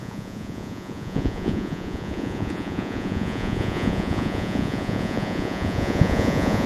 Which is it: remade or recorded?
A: remade